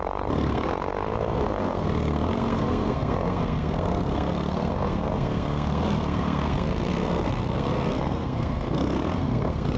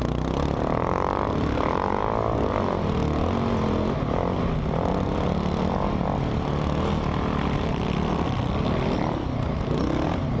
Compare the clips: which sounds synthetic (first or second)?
first